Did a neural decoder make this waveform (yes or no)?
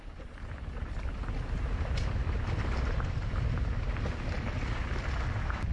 no